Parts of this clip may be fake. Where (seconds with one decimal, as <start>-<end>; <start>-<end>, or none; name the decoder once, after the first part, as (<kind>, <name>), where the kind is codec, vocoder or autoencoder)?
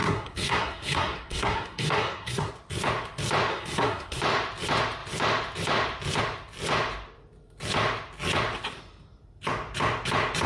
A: 0.0-2.5 (codec, SNAC); 3.5-4.2